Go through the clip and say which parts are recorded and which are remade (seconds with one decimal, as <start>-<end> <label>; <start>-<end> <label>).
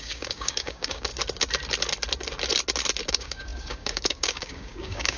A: 0.0-1.1 remade; 1.1-3.1 recorded; 3.1-5.2 remade